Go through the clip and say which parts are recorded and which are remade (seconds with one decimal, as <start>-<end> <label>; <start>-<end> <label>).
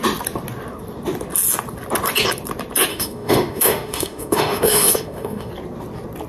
0.0-2.9 recorded; 2.9-5.5 remade; 5.5-6.3 recorded